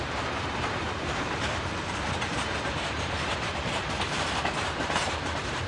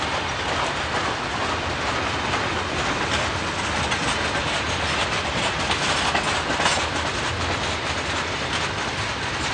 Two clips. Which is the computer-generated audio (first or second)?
first